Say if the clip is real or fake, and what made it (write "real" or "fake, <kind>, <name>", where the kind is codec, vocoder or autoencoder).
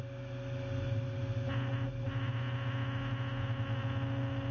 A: real